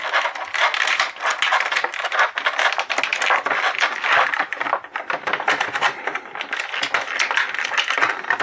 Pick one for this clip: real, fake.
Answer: real